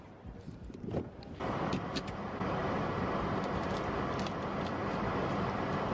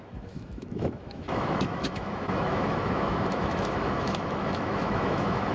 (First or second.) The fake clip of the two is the second